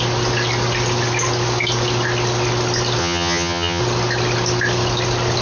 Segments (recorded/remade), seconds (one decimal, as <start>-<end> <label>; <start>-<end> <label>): 0.0-3.0 recorded; 3.0-3.8 remade; 3.8-5.4 recorded